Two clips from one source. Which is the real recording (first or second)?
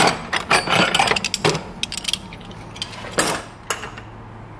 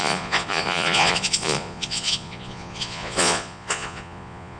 first